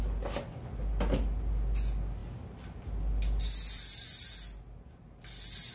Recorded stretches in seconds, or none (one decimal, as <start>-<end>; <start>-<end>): 0.0-5.7